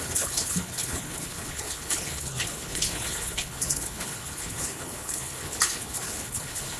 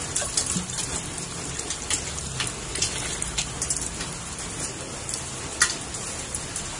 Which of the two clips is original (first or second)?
second